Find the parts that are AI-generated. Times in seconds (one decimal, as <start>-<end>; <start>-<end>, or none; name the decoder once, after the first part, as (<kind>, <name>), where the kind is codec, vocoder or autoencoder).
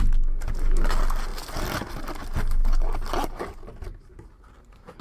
none